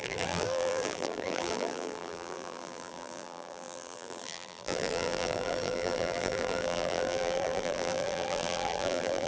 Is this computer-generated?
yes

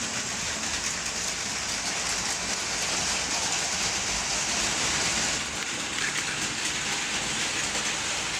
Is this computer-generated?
no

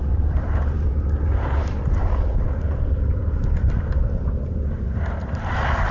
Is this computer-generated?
yes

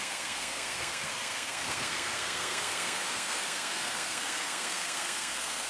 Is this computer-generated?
yes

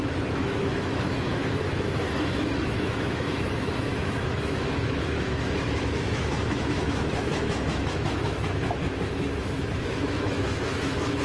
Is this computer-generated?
yes